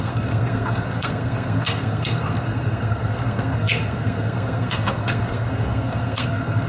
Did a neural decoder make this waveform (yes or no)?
yes